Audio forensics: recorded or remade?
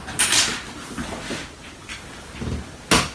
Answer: recorded